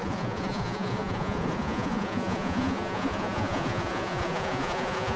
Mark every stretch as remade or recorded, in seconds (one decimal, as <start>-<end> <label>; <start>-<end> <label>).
0.0-5.2 remade